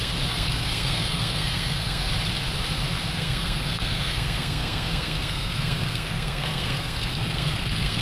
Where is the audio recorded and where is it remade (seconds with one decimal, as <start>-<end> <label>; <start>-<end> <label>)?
0.0-2.1 remade; 2.1-3.1 recorded; 3.1-8.0 remade